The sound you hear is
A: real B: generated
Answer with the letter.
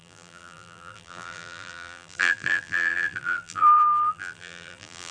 B